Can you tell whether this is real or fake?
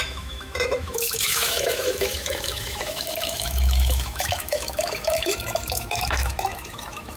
fake